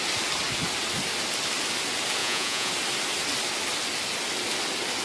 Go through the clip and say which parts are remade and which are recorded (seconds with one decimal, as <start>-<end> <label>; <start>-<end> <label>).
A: 0.0-2.2 recorded; 2.2-2.7 remade; 2.7-5.0 recorded